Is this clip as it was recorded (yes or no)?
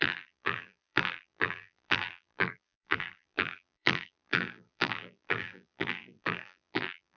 no